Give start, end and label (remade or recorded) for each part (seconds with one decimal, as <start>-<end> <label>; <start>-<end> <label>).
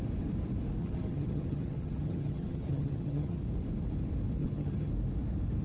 0.0-0.8 recorded; 0.8-3.4 remade; 3.4-4.4 recorded; 4.4-4.9 remade; 4.9-5.6 recorded